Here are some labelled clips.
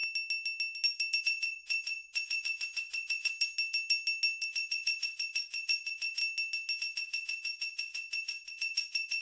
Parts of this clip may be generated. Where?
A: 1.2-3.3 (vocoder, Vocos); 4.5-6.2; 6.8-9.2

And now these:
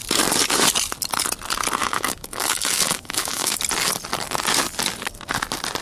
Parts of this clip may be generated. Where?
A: 1.8-3.6 (autoencoder, DAC-VAE)

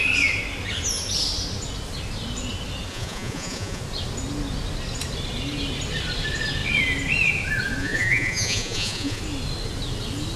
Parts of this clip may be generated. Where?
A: 2.9-3.8 (vocoder, Vocos); 7.8-9.2

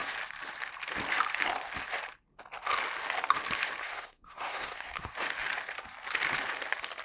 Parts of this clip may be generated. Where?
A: 3.8-5.1 (codec, SNAC)

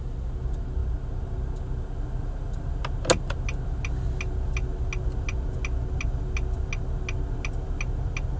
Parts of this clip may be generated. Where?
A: none

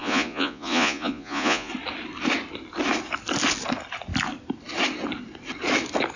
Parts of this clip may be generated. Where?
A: 0.0-1.7 (vocoder, Vocos)

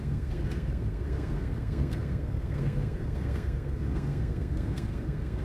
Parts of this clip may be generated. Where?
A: 0.0-5.4 (codec, SNAC)

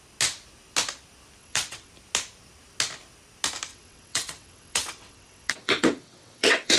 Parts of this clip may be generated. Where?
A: 1.4-1.9 (vocoder, WaveNeXt); 3.7-6.8